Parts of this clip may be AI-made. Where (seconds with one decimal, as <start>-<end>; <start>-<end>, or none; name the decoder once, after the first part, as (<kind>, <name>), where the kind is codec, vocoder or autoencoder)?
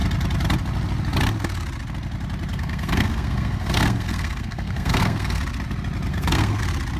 2.5-5.4 (codec, SNAC); 6.1-6.6